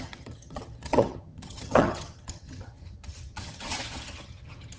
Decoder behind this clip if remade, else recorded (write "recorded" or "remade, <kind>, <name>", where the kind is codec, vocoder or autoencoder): remade, vocoder, HiFi-GAN